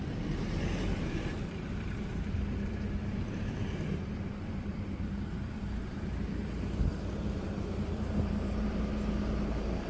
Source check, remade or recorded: remade